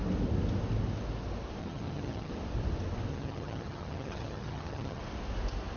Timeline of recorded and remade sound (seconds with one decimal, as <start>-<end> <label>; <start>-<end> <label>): 0.0-1.6 recorded; 1.6-2.3 remade; 2.3-3.1 recorded; 3.1-5.0 remade; 5.0-5.8 recorded